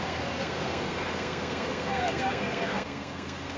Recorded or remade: remade